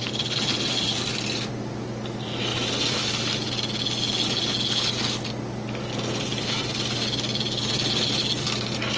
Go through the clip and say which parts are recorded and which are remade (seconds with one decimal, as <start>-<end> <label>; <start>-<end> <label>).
0.0-9.0 recorded

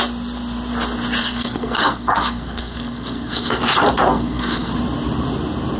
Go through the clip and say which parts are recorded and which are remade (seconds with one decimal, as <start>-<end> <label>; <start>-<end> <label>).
0.0-1.2 recorded; 1.2-3.6 remade; 3.6-4.1 recorded; 4.1-4.7 remade; 4.7-5.8 recorded